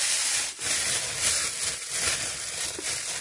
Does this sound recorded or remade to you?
remade